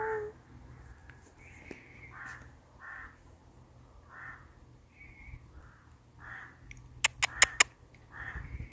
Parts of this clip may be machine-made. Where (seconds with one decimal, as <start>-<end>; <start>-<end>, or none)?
none